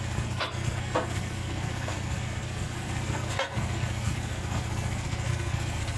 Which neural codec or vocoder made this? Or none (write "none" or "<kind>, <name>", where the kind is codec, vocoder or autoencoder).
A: codec, SNAC